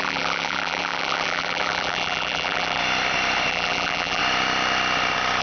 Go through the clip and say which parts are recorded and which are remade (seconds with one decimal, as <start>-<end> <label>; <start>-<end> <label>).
0.0-2.8 remade; 2.8-3.5 recorded; 3.5-4.2 remade; 4.2-5.4 recorded